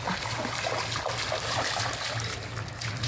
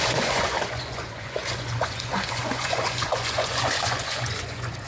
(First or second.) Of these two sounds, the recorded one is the first